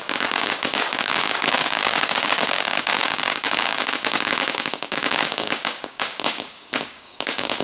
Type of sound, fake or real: fake